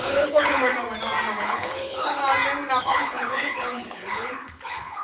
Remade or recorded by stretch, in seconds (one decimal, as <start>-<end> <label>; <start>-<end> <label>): 0.0-0.7 remade; 0.7-1.4 recorded; 1.4-2.2 remade; 2.2-2.8 recorded; 2.8-5.0 remade